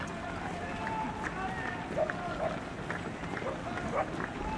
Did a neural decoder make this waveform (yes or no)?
no